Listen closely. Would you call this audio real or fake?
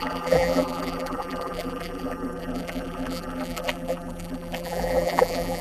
fake